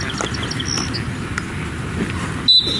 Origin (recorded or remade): recorded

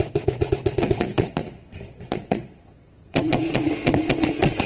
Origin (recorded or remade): remade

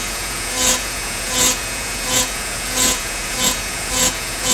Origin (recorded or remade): remade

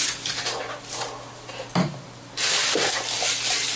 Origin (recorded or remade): recorded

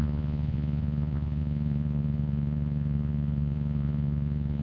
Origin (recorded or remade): remade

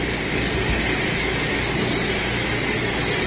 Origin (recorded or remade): recorded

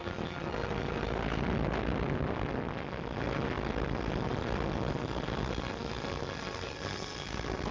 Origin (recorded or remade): recorded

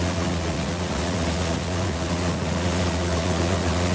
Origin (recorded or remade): remade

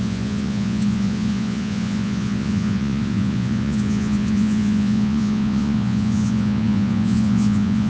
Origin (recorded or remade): remade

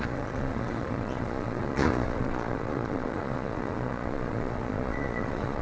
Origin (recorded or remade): remade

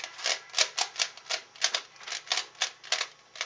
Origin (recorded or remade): recorded